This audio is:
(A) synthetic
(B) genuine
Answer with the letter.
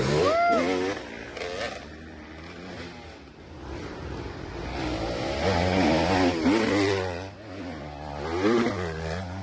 B